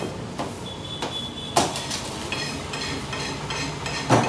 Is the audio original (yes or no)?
yes